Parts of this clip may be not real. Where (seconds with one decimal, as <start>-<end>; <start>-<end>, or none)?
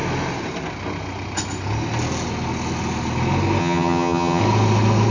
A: 3.6-4.4